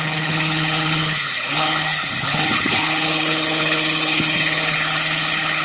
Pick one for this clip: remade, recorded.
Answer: remade